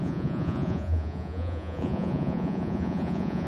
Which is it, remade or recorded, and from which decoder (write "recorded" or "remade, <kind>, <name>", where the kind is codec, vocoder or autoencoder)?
remade, vocoder, Vocos